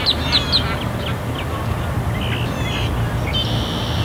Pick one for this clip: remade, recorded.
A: recorded